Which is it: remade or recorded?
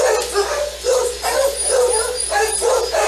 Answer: recorded